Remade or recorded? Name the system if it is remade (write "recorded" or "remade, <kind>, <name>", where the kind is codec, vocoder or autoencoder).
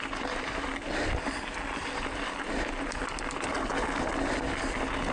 recorded